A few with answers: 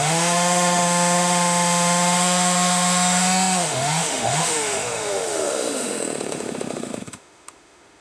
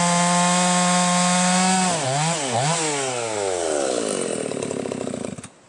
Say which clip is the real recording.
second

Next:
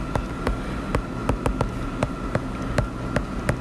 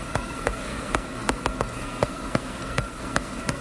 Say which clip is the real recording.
first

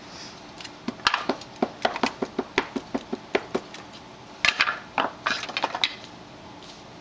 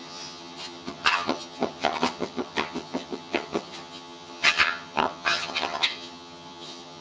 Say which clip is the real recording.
first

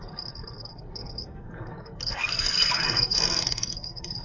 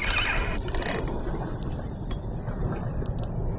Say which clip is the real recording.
second